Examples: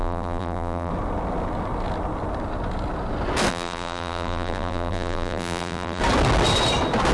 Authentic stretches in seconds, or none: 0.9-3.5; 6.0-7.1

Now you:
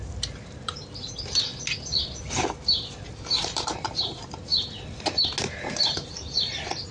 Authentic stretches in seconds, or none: 1.5-2.2; 4.5-5.5

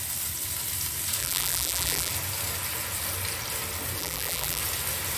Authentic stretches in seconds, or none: 0.0-1.2; 2.1-4.0; 4.6-5.2

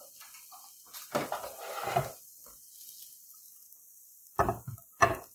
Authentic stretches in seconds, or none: 0.0-5.3

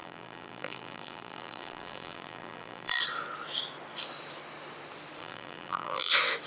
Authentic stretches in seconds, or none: 3.0-5.2; 6.1-6.5

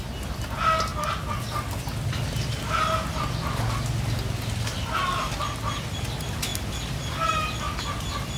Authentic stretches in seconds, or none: 0.0-8.4

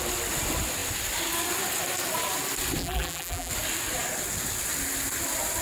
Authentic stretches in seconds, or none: 0.0-2.8; 3.5-5.6